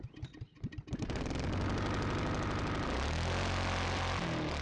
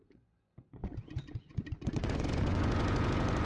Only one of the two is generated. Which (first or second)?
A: second